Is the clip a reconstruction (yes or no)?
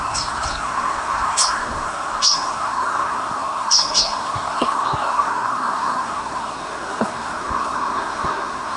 yes